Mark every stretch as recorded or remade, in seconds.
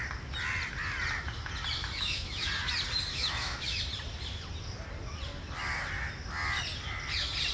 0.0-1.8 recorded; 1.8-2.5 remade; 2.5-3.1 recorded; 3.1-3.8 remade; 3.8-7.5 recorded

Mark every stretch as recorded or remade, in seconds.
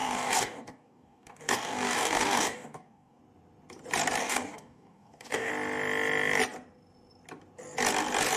0.0-3.2 remade; 3.2-4.2 recorded; 4.2-5.5 remade; 5.5-8.4 recorded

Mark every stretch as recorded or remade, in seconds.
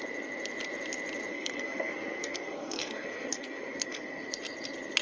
0.0-1.3 recorded; 1.3-4.3 remade; 4.3-5.0 recorded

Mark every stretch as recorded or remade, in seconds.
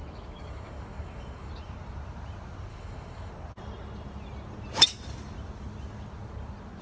0.0-1.5 remade; 1.5-2.7 recorded; 2.7-3.3 remade; 3.3-6.8 recorded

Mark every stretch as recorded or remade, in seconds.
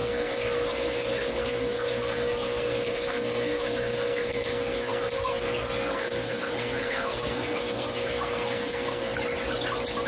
0.0-9.1 remade; 9.1-10.1 recorded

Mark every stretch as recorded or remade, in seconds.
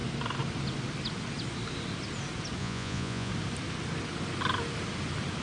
0.0-2.6 recorded; 2.6-3.3 remade; 3.3-5.4 recorded